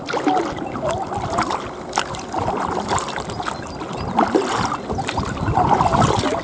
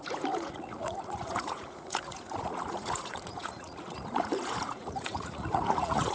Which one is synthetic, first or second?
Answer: second